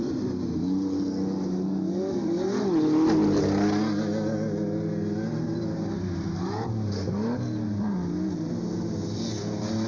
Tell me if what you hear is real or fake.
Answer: real